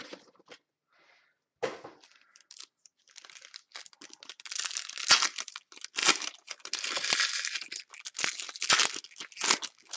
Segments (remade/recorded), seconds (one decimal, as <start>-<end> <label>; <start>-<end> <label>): 0.0-10.0 recorded